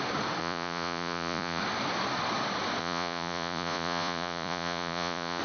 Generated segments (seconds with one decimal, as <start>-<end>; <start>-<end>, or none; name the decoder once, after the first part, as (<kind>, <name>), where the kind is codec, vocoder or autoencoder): 0.4-1.6 (vocoder, Vocos); 2.8-5.4

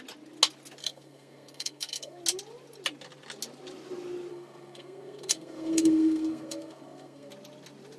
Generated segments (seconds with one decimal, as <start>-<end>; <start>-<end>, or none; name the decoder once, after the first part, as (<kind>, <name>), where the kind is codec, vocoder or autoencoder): 0.8-2.2 (codec, SNAC); 4.3-7.3

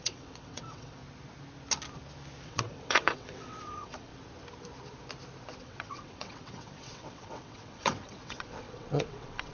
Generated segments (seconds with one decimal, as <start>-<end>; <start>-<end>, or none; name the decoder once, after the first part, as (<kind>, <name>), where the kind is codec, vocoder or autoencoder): 0.0-1.0 (vocoder, WaveNeXt); 2.4-4.1; 5.6-9.5

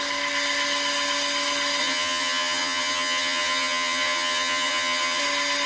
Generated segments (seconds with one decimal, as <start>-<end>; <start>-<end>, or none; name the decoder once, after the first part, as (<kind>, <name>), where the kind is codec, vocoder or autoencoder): 1.8-5.2 (vocoder, HiFi-GAN)

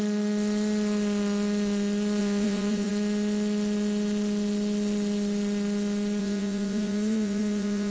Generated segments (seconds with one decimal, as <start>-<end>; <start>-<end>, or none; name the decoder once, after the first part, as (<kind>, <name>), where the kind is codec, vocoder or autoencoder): 2.2-2.9 (vocoder, Vocos); 6.2-7.9

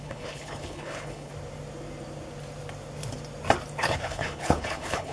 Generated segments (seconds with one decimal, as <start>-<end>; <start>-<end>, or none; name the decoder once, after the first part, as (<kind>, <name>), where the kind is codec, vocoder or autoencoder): 0.0-1.3 (codec, HILCodec); 3.8-5.1

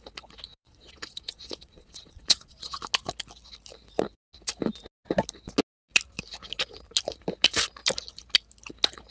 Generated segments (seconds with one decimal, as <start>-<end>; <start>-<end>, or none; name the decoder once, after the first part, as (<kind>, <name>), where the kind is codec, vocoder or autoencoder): 0.5-2.8 (vocoder, Vocos)